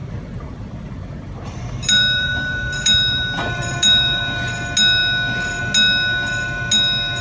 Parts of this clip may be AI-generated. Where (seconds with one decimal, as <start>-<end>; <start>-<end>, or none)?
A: 0.0-4.2